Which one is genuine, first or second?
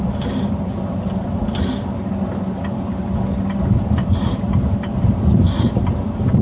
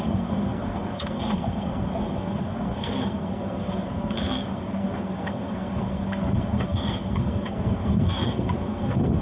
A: first